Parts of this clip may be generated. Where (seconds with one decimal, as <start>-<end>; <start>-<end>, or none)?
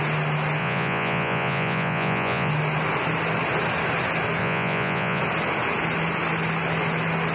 0.6-2.5; 4.4-5.2